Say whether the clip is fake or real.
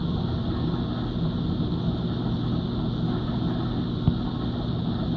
real